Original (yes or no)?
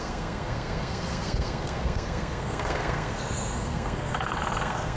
no